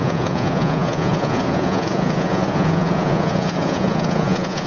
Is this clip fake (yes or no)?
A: yes